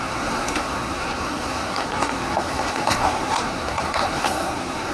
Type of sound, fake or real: fake